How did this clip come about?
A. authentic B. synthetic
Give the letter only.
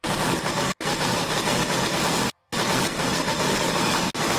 B